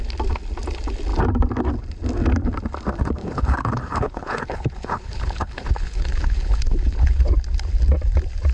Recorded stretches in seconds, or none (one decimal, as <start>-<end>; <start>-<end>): 0.0-3.2; 7.3-8.5